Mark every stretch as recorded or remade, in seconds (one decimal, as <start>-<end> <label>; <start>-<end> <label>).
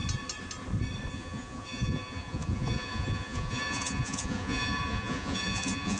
0.0-1.1 recorded; 1.1-6.0 remade